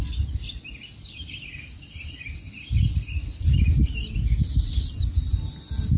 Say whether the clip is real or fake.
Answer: real